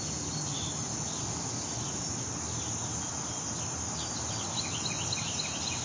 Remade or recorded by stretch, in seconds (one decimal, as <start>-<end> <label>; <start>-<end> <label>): 0.0-5.8 recorded